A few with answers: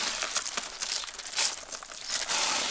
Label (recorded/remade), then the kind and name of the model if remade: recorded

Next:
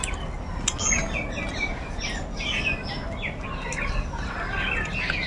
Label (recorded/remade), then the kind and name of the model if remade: recorded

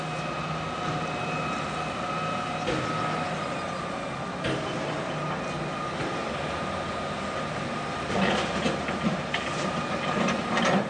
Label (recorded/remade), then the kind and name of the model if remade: recorded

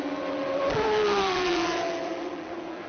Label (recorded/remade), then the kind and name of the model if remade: remade, vocoder, BigVGAN v2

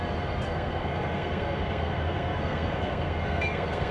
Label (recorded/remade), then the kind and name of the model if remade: remade, codec, SNAC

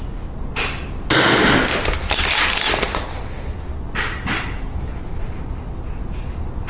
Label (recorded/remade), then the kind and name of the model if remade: recorded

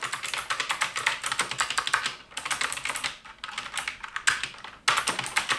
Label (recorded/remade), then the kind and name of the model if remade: recorded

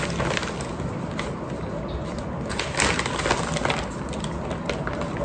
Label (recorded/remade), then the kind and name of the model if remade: recorded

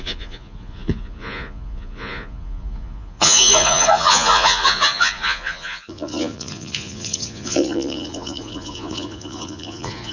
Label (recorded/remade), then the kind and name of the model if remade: remade, vocoder, Vocos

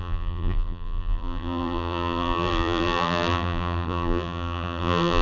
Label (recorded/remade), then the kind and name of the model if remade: remade, vocoder, BigVGAN v2